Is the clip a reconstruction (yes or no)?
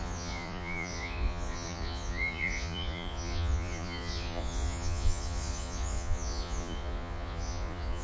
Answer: yes